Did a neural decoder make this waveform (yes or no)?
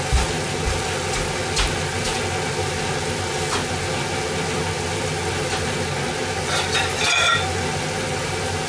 no